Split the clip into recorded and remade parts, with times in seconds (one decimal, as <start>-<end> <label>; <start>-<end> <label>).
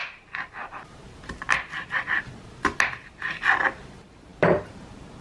0.0-5.2 recorded